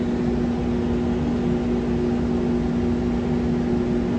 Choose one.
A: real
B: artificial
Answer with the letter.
A